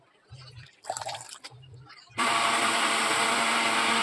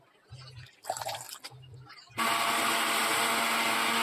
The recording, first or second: second